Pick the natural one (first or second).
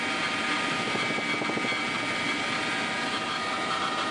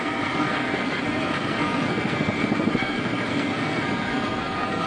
first